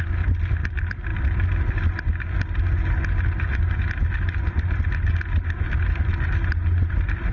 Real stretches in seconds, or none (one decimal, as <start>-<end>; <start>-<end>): 0.0-7.3